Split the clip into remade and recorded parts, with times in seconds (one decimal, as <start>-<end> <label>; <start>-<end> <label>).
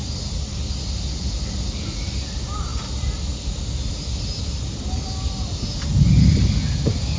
0.0-7.2 recorded